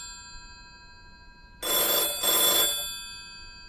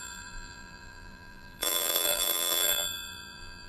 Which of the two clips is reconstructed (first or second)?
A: second